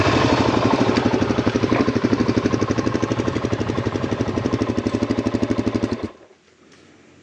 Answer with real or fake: fake